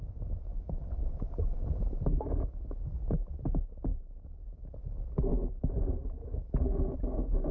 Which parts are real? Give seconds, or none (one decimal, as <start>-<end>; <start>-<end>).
0.0-1.0; 2.2-3.9; 4.7-5.3; 6.8-7.5